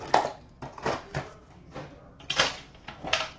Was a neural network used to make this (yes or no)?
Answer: no